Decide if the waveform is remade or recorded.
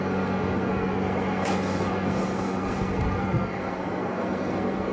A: remade